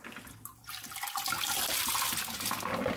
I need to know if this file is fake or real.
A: real